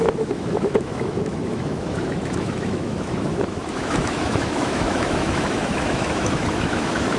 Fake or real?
fake